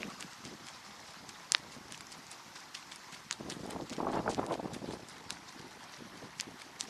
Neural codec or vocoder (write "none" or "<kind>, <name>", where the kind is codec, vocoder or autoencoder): none